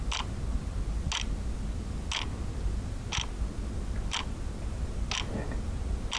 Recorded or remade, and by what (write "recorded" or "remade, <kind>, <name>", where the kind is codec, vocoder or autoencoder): recorded